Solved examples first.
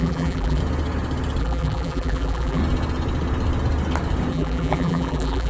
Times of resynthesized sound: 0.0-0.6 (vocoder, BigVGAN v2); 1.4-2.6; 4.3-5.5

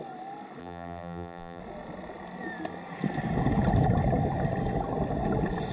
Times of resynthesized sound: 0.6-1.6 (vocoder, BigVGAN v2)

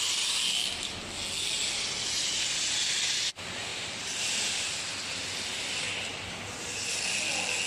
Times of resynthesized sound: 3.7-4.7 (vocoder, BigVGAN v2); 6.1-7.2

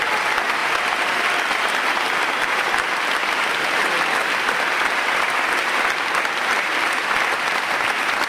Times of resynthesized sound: 0.6-1.2 (vocoder, BigVGAN v2)

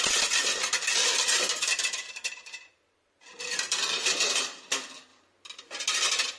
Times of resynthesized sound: 1.0-4.6 (vocoder, BigVGAN v2); 5.1-5.8